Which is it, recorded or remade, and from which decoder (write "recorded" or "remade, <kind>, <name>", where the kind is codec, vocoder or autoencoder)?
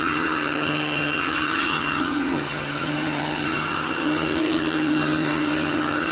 remade, vocoder, HiFi-GAN